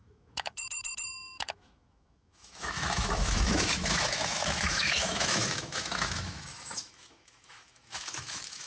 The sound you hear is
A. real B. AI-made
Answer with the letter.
B